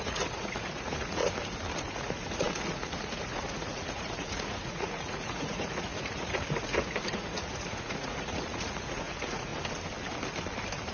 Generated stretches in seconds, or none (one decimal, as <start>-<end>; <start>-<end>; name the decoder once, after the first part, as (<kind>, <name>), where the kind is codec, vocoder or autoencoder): 0.0-1.2 (vocoder, Vocos); 1.8-9.5